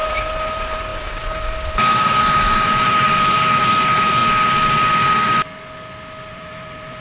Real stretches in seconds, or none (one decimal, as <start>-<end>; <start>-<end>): 4.2-6.3